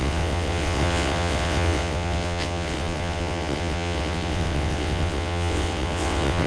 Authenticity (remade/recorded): remade